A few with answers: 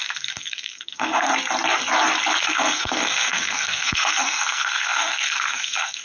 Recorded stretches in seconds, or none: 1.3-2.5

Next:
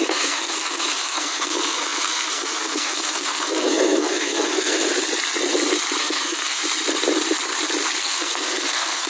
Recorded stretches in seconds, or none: 4.9-6.0; 6.6-8.0

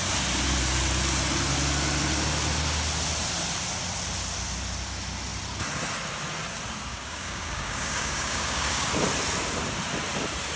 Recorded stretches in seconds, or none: 0.0-6.9; 8.9-10.6

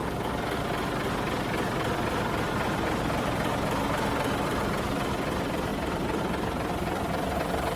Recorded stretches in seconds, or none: 0.0-5.7; 6.2-7.8

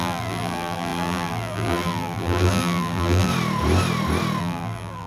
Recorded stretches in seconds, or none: 3.3-4.4

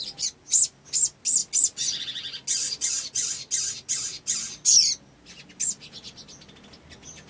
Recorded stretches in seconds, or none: 0.0-7.3

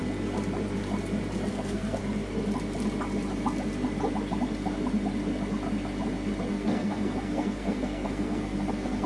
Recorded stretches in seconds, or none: 0.0-1.5; 2.0-6.5

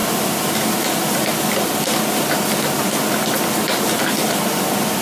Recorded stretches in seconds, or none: 0.0-5.0